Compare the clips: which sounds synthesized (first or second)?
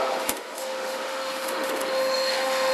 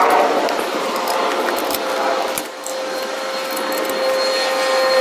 first